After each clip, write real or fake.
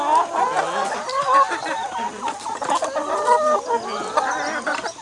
real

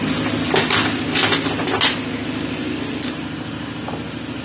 real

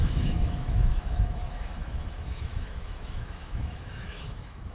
fake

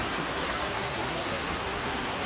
fake